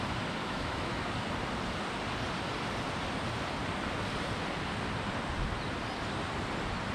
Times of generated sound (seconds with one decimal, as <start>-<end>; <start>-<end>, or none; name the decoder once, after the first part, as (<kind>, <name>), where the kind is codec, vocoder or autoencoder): 0.4-1.1 (autoencoder, DAC-VAE)